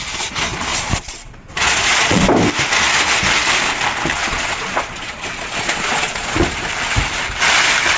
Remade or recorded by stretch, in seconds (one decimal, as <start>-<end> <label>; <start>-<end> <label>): 0.0-0.7 recorded; 0.7-2.2 remade; 2.2-4.2 recorded; 4.2-6.7 remade; 6.7-8.0 recorded